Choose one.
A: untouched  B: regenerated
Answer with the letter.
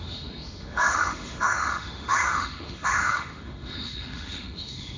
B